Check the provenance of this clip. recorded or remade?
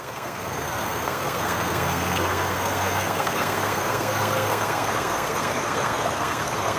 remade